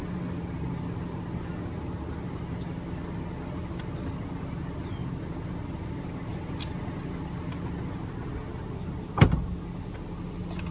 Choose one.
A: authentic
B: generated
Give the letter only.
A